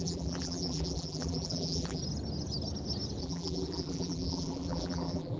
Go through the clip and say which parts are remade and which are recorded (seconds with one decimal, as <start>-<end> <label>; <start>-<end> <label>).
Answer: 0.0-2.0 remade; 2.0-3.2 recorded; 3.2-5.4 remade